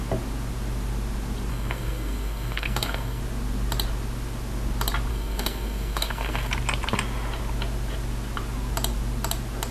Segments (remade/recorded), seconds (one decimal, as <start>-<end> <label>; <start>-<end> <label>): 0.0-1.5 recorded; 1.5-3.2 remade; 3.2-5.1 recorded; 5.1-6.5 remade; 6.5-9.7 recorded